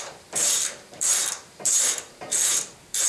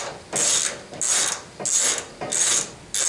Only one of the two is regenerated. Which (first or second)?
first